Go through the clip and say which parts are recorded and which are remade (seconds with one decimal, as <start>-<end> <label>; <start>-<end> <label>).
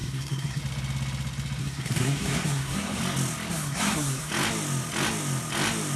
0.0-0.6 remade; 0.6-1.6 recorded; 1.6-3.0 remade; 3.0-3.5 recorded; 3.5-4.3 remade; 4.3-6.0 recorded